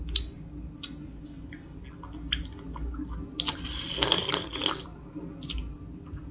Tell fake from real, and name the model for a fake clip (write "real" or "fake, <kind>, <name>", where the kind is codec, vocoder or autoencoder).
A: real